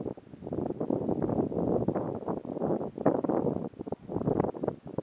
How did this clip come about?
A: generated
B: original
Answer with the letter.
B